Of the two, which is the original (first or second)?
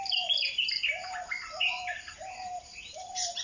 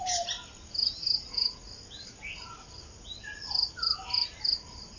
second